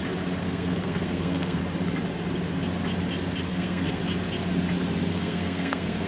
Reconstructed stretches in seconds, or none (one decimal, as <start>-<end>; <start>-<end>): 0.4-1.6; 3.5-4.0; 5.1-6.1